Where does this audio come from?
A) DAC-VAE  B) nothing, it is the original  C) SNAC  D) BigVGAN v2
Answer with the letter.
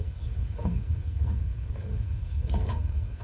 C